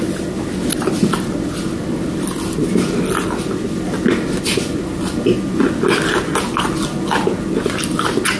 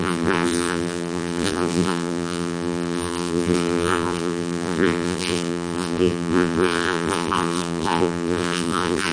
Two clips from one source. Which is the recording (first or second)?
first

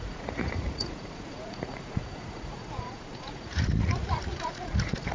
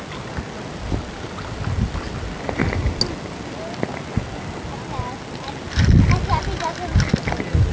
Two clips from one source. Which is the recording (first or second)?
second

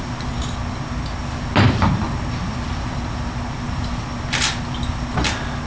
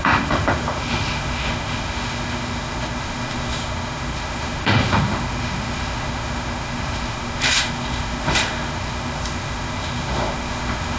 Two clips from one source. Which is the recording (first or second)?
first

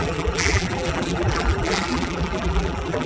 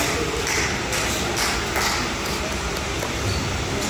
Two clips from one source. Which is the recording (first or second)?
second